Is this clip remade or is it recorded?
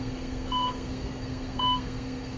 remade